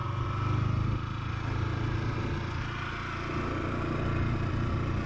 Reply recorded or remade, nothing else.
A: recorded